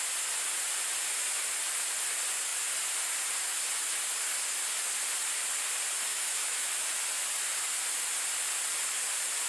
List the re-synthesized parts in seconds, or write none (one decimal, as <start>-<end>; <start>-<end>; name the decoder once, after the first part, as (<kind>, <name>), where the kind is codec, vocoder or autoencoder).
6.1-6.7 (autoencoder, DAC-VAE)